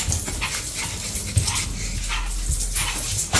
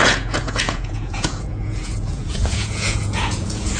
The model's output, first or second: second